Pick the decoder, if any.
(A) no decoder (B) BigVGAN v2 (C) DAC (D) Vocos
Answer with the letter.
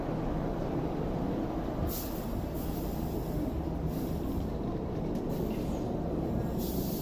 A